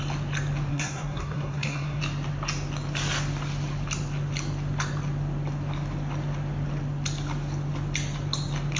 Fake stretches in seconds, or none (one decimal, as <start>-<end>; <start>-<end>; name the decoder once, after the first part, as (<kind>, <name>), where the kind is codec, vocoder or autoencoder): 0.7-2.0 (codec, SNAC)